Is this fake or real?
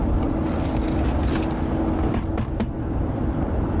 real